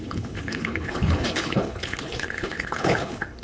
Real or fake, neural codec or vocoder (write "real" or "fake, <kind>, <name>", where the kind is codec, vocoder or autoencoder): fake, codec, HILCodec